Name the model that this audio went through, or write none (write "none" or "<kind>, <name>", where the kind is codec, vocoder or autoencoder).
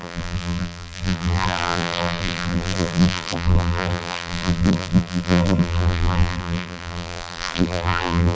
vocoder, BigVGAN v2